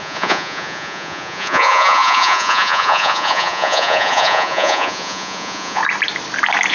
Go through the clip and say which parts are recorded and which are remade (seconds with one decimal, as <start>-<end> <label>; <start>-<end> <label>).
0.0-5.8 remade; 5.8-6.7 recorded